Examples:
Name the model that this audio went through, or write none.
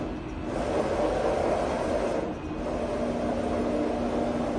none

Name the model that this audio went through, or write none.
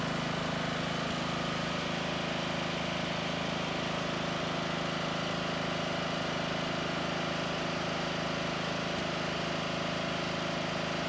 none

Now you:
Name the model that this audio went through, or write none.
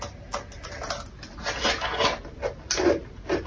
none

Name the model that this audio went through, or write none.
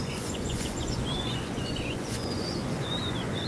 vocoder, Vocos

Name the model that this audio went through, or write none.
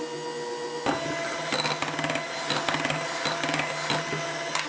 none